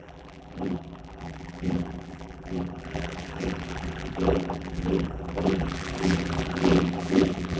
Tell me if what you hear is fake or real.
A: fake